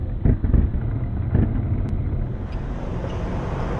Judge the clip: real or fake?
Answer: real